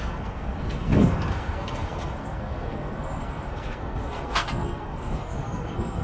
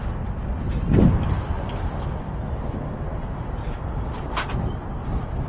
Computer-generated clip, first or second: first